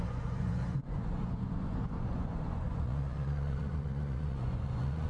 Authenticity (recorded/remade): remade